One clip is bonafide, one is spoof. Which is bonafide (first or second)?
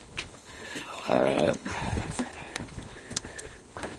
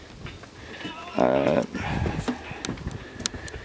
second